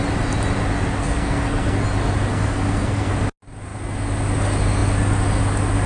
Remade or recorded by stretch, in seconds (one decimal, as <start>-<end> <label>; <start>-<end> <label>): 0.0-1.0 recorded; 1.0-1.8 remade; 1.8-2.3 recorded; 2.3-3.1 remade; 3.1-5.9 recorded